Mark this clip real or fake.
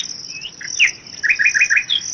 real